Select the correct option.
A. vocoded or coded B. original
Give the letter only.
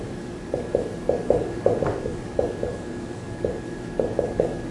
A